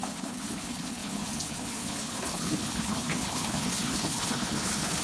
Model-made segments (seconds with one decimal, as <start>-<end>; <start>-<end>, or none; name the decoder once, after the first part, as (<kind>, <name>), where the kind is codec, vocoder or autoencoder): 0.0-5.0 (codec, HILCodec)